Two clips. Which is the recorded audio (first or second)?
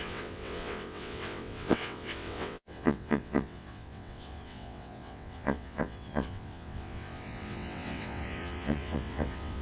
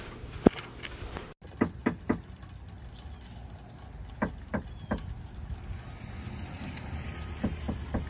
second